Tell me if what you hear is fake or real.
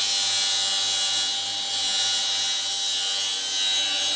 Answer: real